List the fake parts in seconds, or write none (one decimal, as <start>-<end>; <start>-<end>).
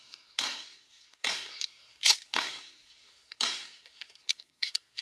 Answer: 0.0-5.0